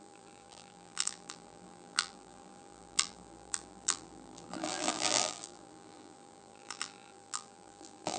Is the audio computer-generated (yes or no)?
yes